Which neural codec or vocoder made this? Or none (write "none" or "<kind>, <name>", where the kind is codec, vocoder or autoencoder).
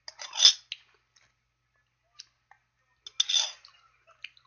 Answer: none